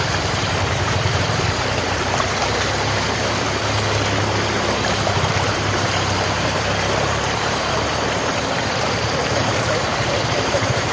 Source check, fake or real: fake